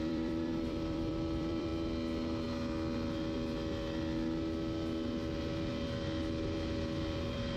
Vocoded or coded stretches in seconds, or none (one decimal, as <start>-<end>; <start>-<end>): 0.0-1.7; 5.7-7.6

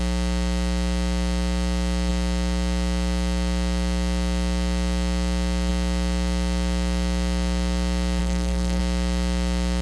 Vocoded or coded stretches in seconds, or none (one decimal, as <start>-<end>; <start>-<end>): 8.2-8.8